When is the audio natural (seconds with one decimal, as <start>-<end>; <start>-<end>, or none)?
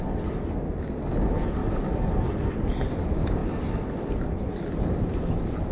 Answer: 0.0-5.7